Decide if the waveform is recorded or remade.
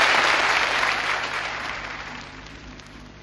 remade